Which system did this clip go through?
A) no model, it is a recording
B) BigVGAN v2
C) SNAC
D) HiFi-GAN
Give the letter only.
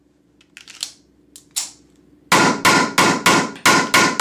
A